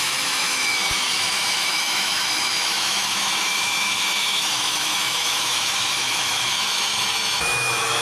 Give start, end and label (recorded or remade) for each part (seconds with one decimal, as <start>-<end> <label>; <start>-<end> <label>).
0.0-8.0 remade